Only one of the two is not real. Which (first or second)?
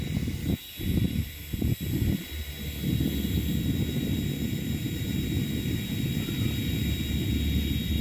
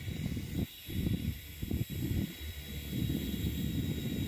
second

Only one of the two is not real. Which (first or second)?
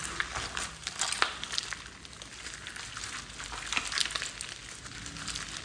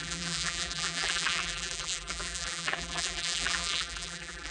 second